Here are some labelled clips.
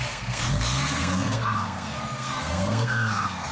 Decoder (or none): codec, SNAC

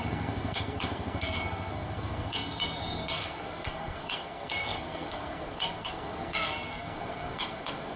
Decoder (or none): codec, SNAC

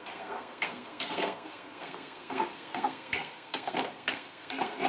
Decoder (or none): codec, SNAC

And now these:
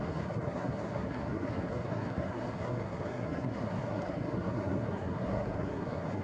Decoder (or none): codec, SNAC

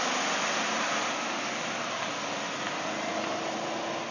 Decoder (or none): none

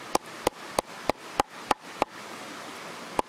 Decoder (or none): none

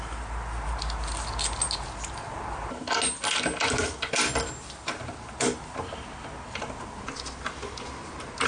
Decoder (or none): none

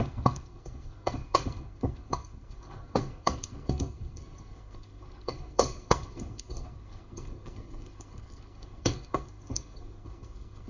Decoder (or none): codec, SNAC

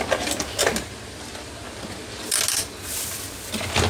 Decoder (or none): none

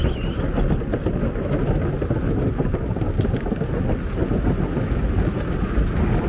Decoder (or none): none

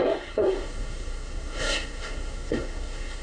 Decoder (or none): codec, SNAC